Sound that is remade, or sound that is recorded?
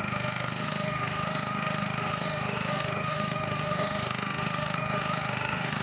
remade